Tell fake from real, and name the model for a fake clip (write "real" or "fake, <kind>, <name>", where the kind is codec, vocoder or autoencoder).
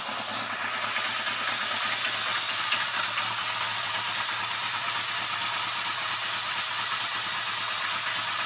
real